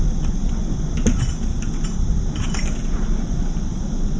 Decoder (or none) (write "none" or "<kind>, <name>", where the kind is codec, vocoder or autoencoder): none